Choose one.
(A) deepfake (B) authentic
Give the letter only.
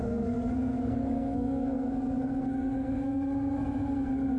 A